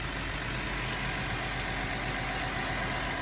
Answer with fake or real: real